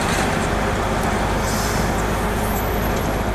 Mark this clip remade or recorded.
recorded